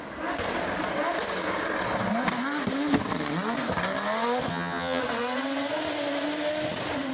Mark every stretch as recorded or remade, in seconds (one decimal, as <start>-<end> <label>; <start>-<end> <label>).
0.0-4.5 recorded; 4.5-5.0 remade; 5.0-7.1 recorded